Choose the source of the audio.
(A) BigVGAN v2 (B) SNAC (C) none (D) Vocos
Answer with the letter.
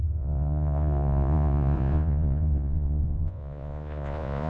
D